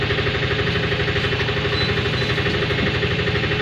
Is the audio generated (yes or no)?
no